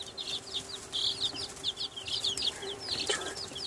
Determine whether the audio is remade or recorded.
recorded